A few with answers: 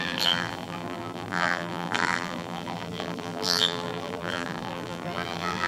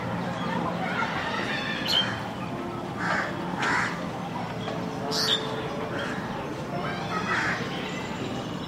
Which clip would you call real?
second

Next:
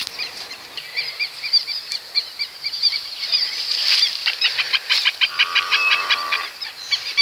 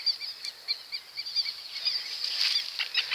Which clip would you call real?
second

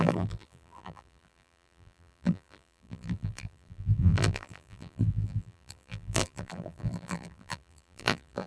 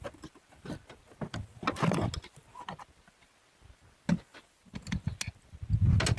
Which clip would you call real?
second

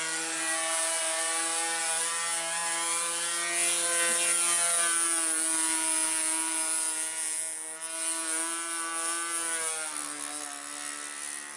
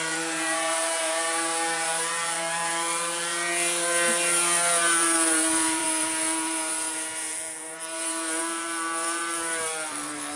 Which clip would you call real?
first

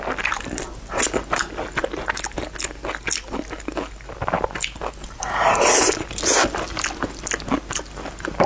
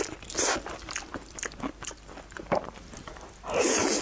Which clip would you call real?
first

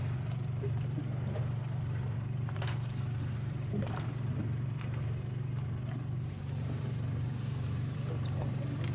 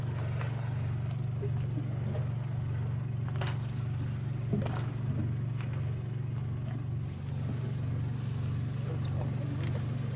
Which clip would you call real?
second